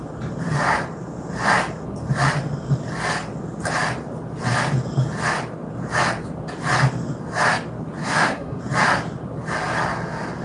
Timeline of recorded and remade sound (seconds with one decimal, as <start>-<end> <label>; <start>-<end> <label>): 0.0-8.0 recorded; 8.0-8.6 remade; 8.6-10.4 recorded